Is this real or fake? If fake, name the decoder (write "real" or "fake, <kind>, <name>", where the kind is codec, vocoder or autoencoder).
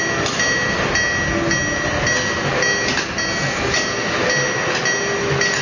real